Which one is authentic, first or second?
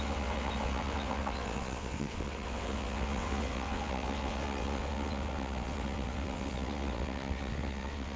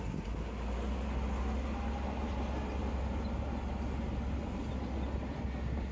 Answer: second